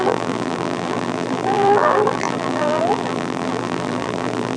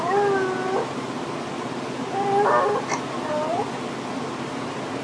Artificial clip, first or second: first